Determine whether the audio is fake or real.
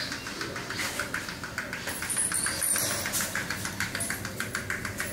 real